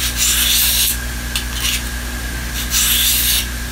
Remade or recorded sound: recorded